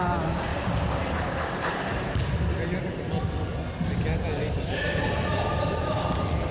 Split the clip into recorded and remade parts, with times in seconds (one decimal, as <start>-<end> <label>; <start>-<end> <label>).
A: 0.0-0.5 remade; 0.5-4.4 recorded; 4.4-5.0 remade; 5.0-6.5 recorded